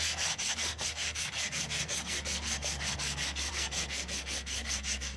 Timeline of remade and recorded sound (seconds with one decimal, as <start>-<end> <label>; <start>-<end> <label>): 0.0-5.2 remade